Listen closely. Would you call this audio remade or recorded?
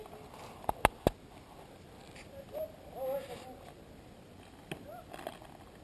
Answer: recorded